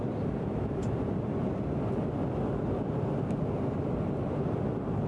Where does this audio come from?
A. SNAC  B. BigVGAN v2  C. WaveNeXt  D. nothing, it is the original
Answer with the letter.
D